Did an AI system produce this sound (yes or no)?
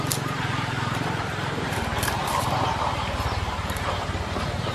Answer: yes